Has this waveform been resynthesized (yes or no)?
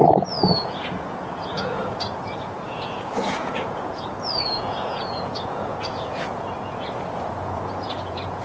yes